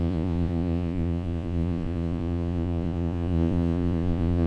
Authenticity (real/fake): fake